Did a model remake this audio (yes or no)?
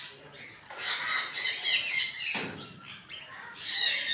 no